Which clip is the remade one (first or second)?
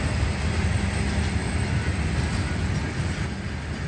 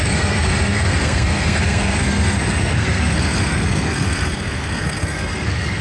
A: second